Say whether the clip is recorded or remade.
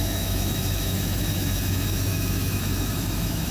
remade